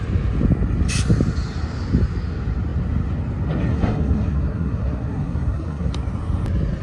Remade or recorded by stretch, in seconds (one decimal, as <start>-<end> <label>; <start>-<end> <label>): 0.0-3.7 recorded; 3.7-5.9 remade; 5.9-6.8 recorded